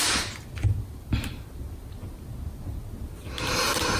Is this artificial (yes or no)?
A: no